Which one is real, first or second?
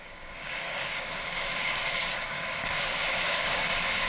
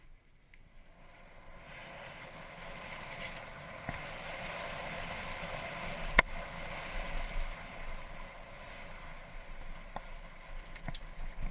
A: second